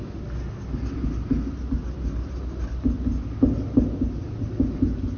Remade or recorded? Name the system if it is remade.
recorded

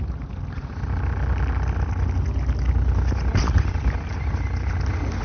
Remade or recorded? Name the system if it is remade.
recorded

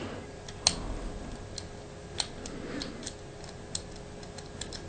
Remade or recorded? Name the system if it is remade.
recorded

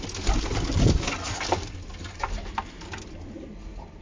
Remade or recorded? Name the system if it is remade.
recorded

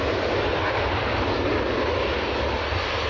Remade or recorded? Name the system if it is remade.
recorded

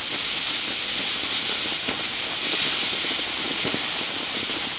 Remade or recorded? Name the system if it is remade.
recorded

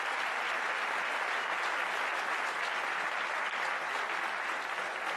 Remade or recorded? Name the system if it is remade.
recorded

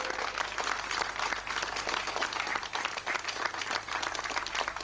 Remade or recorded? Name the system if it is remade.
recorded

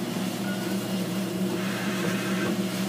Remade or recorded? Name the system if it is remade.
remade, vocoder, BigVGAN v2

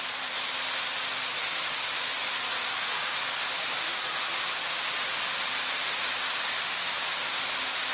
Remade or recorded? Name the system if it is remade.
recorded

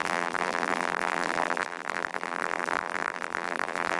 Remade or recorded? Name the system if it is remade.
remade, vocoder, BigVGAN v2